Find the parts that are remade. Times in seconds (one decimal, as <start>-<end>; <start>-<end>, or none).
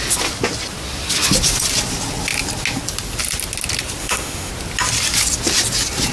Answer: 4.0-4.5